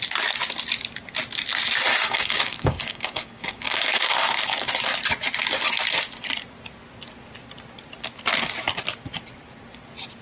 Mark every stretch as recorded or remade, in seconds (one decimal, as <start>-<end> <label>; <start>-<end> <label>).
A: 0.0-1.9 recorded; 1.9-4.7 remade; 4.7-10.2 recorded